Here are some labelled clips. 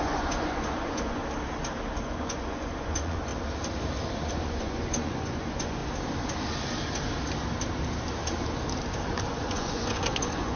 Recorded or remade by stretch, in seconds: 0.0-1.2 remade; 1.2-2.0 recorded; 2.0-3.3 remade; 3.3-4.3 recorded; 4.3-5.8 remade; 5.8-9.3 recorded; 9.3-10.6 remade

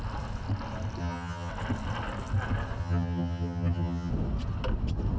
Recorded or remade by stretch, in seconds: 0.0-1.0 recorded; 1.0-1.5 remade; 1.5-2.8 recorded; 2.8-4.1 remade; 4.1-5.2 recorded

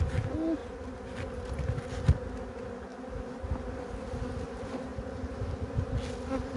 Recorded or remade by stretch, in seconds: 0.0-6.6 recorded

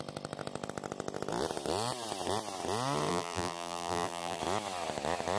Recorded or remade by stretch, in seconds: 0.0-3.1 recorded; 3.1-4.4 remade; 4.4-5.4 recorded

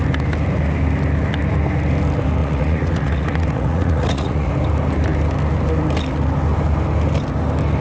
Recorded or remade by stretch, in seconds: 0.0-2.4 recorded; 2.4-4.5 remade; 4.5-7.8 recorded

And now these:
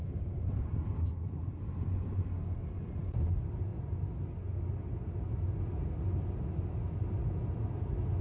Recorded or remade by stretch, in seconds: 0.0-8.2 recorded

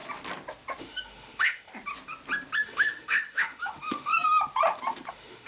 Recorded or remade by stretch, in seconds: 0.0-0.8 recorded; 0.8-1.7 remade; 1.7-2.6 recorded; 2.6-4.1 remade; 4.1-5.1 recorded; 5.1-5.5 remade